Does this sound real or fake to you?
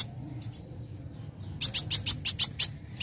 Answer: real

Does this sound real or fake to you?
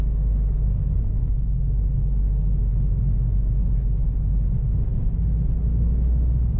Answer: real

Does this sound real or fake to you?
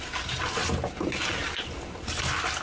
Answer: real